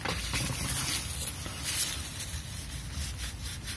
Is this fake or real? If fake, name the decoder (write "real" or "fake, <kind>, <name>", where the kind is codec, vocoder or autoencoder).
real